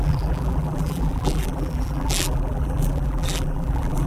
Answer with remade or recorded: remade